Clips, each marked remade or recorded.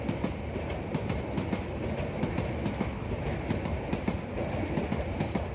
recorded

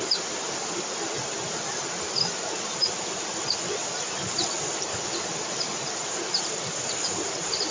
recorded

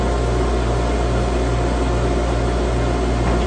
recorded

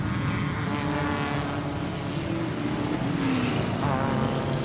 recorded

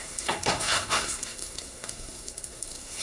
remade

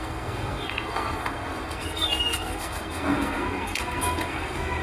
remade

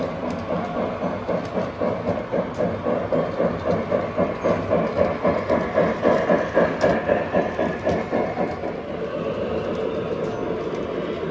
recorded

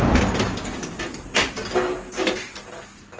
recorded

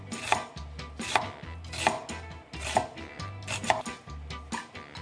recorded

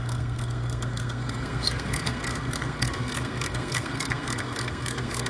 remade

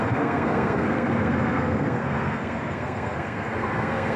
remade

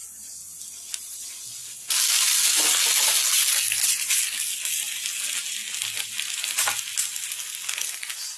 recorded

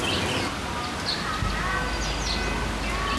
recorded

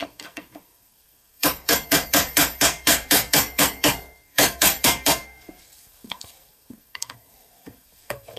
remade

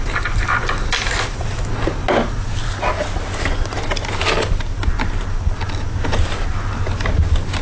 recorded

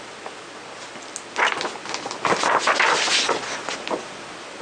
recorded